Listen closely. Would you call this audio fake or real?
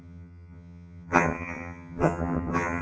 fake